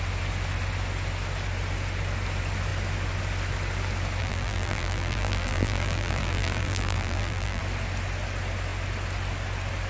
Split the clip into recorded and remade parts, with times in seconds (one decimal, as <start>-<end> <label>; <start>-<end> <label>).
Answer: 0.0-4.2 recorded; 4.2-7.6 remade; 7.6-9.9 recorded